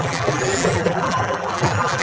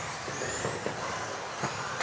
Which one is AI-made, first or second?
first